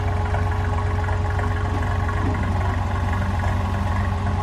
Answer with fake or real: real